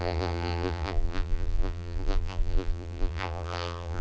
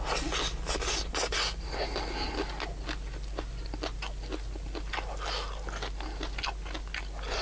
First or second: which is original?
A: second